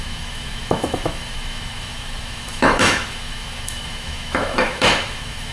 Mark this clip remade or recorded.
remade